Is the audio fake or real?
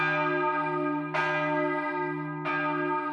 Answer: real